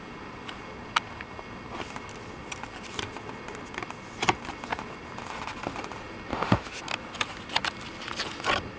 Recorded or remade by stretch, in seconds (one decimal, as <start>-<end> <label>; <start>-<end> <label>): 0.0-6.3 recorded; 6.3-6.8 remade; 6.8-8.8 recorded